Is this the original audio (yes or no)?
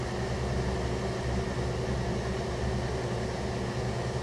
yes